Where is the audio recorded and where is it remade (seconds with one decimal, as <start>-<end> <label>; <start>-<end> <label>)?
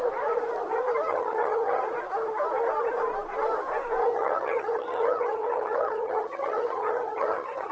0.0-1.1 recorded; 1.1-1.8 remade; 1.8-4.0 recorded; 4.0-7.7 remade